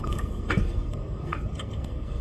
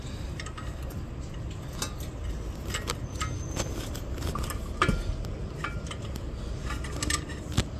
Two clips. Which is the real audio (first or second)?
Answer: second